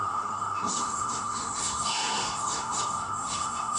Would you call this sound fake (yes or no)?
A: yes